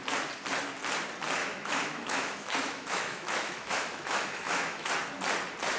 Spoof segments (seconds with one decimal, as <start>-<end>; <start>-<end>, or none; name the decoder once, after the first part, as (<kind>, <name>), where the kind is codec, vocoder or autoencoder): 1.4-4.9 (autoencoder, DAC-VAE)